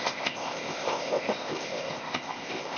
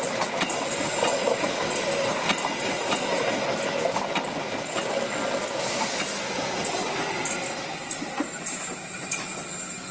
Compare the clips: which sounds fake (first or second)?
first